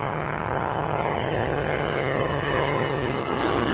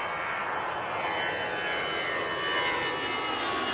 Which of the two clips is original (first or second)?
second